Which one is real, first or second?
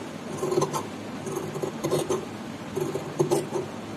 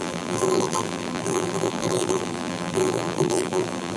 first